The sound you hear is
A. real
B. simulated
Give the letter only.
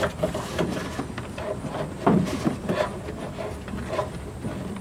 A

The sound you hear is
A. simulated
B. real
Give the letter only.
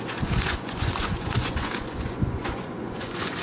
A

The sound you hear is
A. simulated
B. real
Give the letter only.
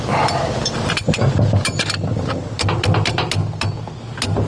B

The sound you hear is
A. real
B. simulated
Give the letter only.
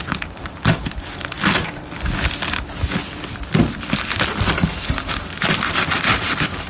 A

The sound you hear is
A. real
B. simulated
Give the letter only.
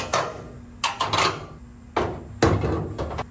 A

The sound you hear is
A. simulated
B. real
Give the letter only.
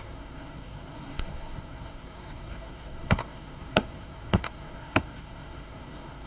A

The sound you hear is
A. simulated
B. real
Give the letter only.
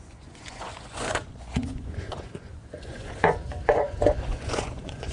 A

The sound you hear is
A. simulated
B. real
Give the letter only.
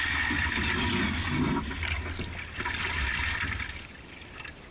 B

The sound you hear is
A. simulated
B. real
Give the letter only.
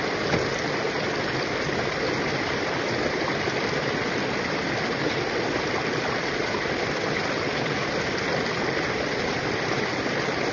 B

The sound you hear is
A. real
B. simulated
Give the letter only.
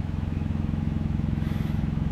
B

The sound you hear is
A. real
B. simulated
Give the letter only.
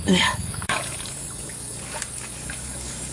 B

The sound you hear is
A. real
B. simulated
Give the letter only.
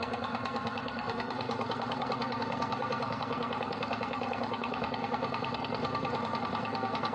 B